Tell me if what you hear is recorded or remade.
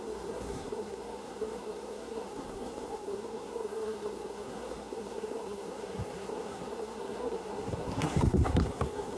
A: remade